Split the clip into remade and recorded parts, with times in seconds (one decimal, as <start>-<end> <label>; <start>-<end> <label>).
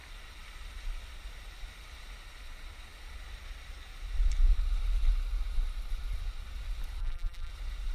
0.0-7.0 recorded; 7.0-7.5 remade; 7.5-7.9 recorded